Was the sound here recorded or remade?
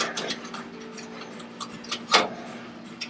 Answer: recorded